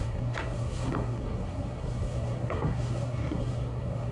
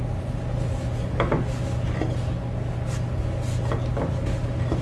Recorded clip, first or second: second